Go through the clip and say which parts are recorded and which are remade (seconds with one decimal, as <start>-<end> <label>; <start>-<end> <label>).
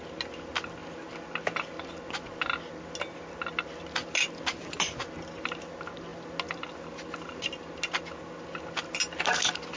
0.0-9.8 recorded